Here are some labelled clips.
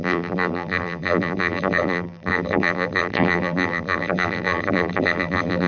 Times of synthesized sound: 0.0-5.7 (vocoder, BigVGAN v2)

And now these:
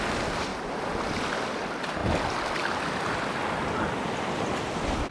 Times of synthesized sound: 0.0-0.5 (vocoder, BigVGAN v2); 1.4-2.0

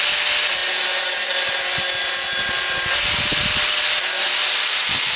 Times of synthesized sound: none

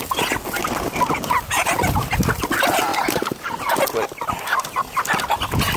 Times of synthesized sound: 2.9-3.6 (vocoder, BigVGAN v2)